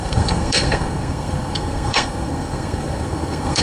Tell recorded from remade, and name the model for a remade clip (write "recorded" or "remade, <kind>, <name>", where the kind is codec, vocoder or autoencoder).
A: remade, codec, SNAC